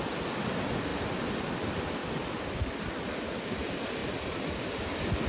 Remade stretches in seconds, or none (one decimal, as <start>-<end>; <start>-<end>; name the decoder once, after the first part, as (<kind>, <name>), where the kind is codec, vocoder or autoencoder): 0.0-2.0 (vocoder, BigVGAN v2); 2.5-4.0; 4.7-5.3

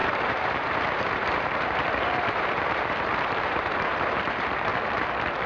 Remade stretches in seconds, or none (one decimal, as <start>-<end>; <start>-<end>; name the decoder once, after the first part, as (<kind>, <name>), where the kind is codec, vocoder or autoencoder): 0.0-4.7 (vocoder, BigVGAN v2)

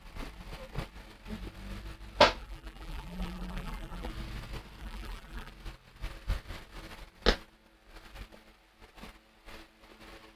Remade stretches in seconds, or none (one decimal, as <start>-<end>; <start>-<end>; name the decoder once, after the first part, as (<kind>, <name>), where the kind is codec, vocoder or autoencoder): 2.4-4.1 (vocoder, BigVGAN v2); 4.8-5.5

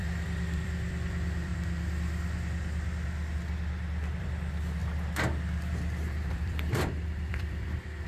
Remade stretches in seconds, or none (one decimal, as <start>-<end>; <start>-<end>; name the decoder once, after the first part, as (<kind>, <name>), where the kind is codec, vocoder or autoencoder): 0.0-1.5 (vocoder, BigVGAN v2); 4.2-4.8; 6.3-8.1

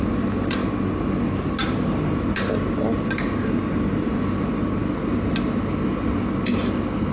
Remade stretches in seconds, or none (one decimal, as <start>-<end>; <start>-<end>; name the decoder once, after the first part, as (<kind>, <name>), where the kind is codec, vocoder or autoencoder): none

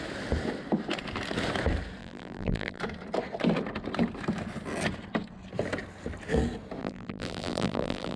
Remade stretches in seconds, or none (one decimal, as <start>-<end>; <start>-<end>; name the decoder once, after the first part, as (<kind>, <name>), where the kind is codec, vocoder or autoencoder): 2.0-2.8 (vocoder, BigVGAN v2); 6.8-8.2

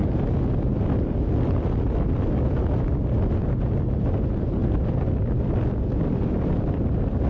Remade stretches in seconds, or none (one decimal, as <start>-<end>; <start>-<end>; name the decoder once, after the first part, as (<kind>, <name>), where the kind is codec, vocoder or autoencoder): none